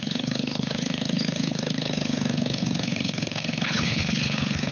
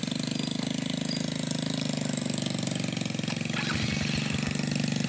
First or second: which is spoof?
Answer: first